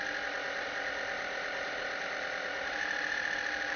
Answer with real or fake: real